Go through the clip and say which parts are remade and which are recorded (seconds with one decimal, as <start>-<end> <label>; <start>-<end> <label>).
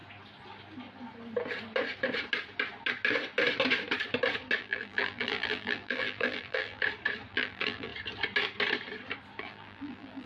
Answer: 0.0-4.6 recorded; 4.6-6.8 remade; 6.8-7.3 recorded; 7.3-7.9 remade; 7.9-9.4 recorded; 9.4-10.3 remade